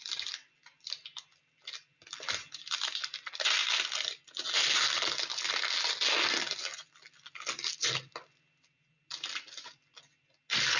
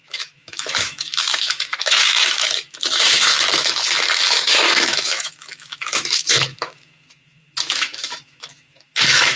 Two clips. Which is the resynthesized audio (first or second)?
second